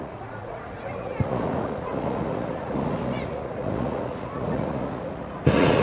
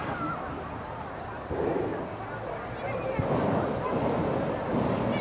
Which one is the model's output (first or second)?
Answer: first